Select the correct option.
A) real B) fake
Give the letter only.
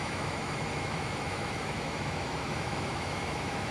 B